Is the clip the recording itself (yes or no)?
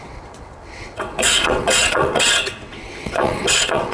no